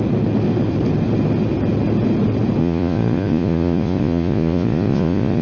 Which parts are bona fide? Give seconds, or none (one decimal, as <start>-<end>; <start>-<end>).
0.0-2.6